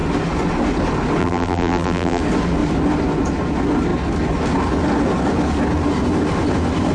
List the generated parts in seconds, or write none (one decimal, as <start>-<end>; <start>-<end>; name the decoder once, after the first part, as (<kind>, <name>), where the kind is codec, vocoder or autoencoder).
1.2-2.2 (vocoder, BigVGAN v2)